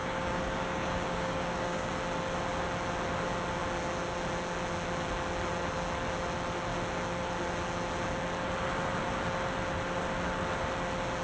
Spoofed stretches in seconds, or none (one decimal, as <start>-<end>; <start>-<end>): 0.0-1.9